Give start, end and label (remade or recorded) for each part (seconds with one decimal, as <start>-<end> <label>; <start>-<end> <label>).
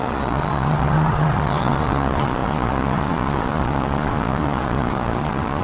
0.0-5.6 remade